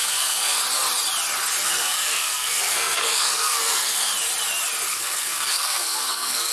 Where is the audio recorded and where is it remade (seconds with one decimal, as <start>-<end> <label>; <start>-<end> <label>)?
0.0-0.6 remade; 0.6-1.6 recorded; 1.6-4.1 remade; 4.1-4.9 recorded; 4.9-6.5 remade